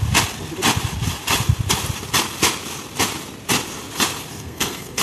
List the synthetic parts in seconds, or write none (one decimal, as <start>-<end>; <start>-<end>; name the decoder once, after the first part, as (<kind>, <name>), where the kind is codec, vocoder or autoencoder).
4.3-5.0 (codec, SNAC)